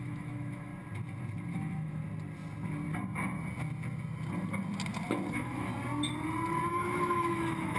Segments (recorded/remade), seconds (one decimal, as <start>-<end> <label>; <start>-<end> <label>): 0.0-0.7 remade; 0.7-1.5 recorded; 1.5-2.0 remade; 2.0-5.3 recorded; 5.3-5.7 remade; 5.7-6.7 recorded; 6.7-7.8 remade